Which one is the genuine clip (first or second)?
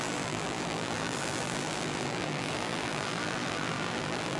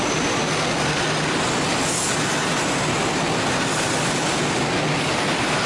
second